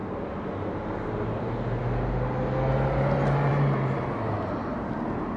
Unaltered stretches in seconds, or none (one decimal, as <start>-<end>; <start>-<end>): 0.0-5.4